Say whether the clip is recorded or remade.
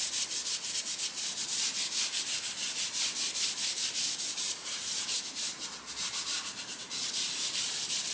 recorded